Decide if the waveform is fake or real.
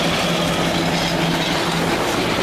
real